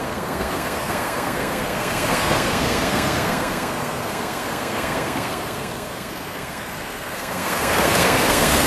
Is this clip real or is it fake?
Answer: fake